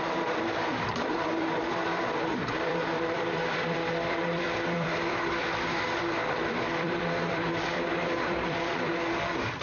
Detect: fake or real fake